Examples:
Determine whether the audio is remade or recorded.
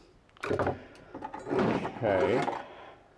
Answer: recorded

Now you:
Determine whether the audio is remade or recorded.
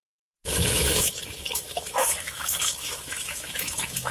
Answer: remade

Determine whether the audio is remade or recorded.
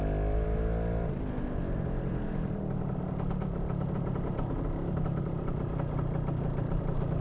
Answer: recorded